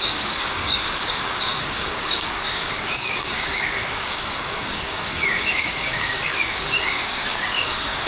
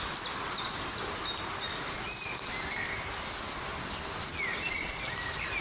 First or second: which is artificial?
first